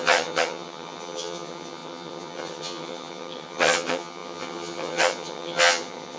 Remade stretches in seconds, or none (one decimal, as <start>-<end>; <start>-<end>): 0.0-6.2